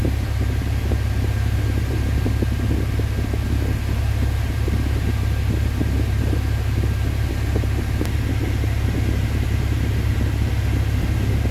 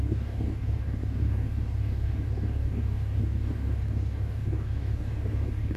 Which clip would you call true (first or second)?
first